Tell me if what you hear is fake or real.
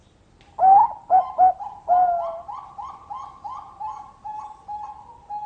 real